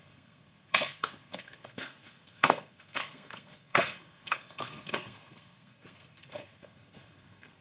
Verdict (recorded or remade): remade